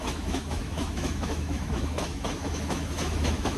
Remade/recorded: remade